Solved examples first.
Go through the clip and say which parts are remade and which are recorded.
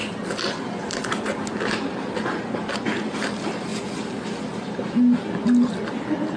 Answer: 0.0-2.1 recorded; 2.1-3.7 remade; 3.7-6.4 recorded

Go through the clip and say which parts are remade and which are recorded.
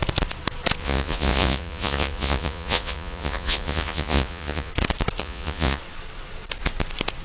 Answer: 0.0-0.8 recorded; 0.8-4.7 remade; 4.7-5.2 recorded; 5.2-5.8 remade; 5.8-7.2 recorded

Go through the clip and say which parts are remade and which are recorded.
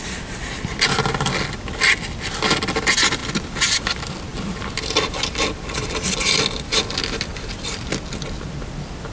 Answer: 0.0-3.2 recorded; 3.2-3.8 remade; 3.8-4.3 recorded; 4.3-6.2 remade; 6.2-7.3 recorded; 7.3-7.8 remade; 7.8-9.1 recorded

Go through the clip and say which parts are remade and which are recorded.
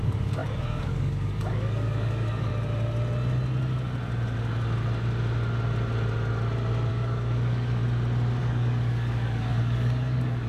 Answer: 0.0-2.5 remade; 2.5-6.9 recorded; 6.9-7.8 remade; 7.8-8.4 recorded; 8.4-10.5 remade